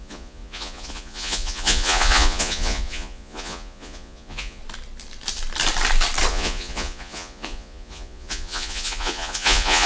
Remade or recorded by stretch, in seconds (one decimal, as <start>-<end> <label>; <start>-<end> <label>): 0.0-4.6 remade; 4.6-6.3 recorded; 6.3-9.9 remade